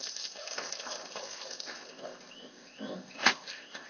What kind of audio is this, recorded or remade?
remade